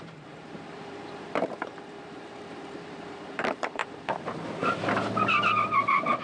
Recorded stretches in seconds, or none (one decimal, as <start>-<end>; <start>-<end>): 3.8-6.2